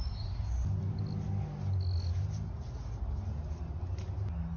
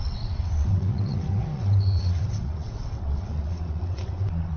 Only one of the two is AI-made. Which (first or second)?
second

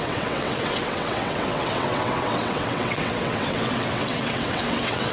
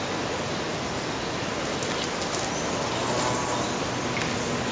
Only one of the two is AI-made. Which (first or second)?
first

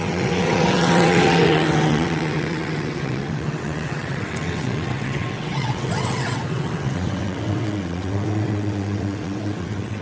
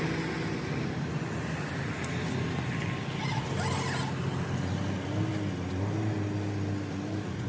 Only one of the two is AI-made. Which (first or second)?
first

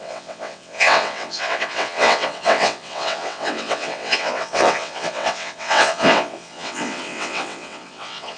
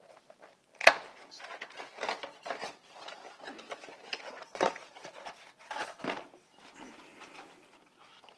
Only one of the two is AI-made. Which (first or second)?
first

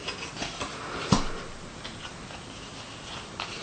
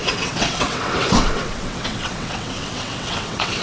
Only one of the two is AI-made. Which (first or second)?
second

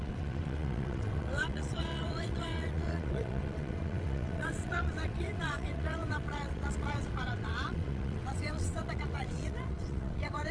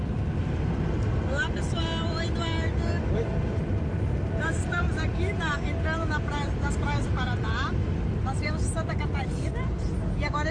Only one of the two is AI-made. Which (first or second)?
first